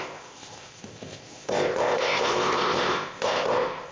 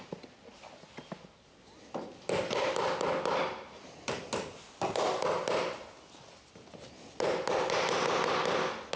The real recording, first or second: second